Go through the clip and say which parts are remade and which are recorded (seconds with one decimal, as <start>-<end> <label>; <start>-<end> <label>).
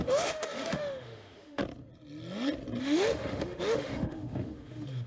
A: 0.0-1.6 remade; 1.6-2.8 recorded; 2.8-5.1 remade